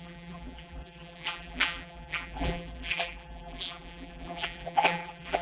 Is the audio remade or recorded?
remade